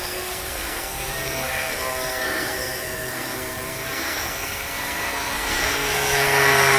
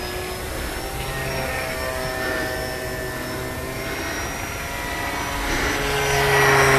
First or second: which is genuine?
second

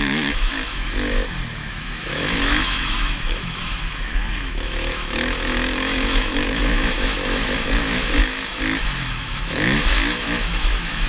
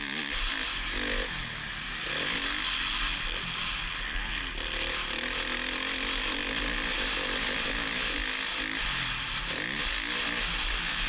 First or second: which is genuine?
second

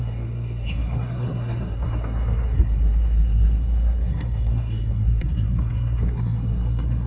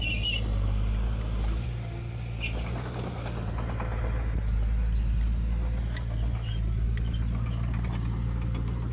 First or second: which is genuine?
second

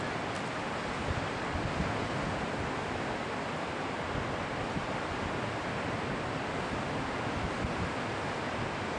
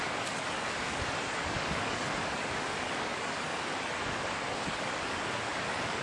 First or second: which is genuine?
first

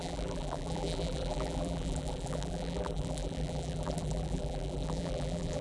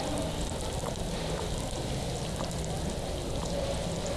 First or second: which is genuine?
second